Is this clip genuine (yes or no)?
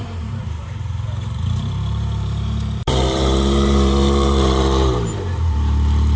no